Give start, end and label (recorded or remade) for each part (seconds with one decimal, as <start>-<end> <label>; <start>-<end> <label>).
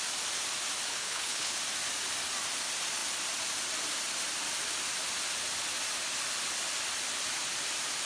0.0-0.9 recorded; 0.9-1.6 remade; 1.6-8.1 recorded